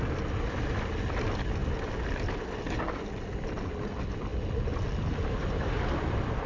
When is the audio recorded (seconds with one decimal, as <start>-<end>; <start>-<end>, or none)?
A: 0.0-5.4